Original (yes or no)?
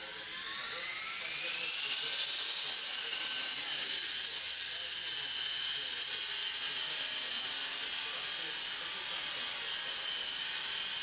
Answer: yes